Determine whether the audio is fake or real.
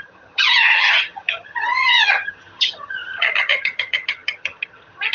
fake